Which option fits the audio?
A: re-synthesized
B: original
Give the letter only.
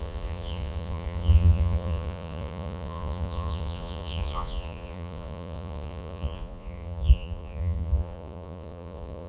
A